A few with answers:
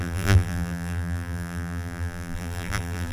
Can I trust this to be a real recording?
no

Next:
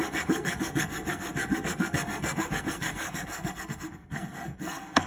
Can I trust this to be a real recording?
no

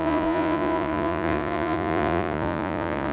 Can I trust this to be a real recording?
no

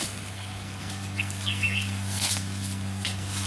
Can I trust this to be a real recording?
no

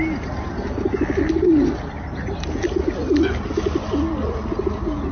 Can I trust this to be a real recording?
yes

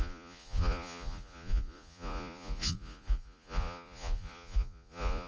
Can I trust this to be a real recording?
no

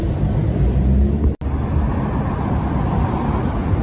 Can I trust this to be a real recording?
yes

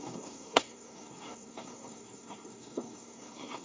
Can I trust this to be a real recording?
no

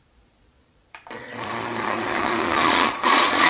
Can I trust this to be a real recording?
no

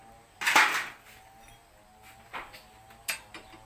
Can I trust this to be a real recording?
yes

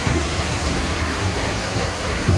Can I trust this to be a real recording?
no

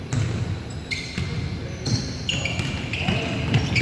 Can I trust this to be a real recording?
yes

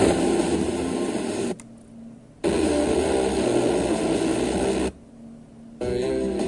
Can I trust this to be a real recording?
yes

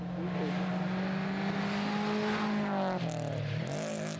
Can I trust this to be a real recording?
yes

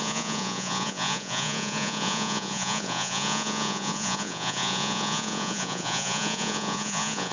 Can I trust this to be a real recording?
no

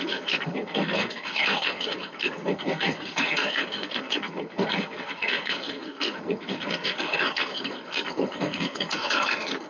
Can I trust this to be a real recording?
no